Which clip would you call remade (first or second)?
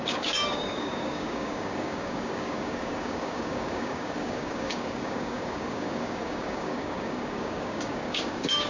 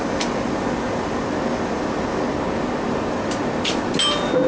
first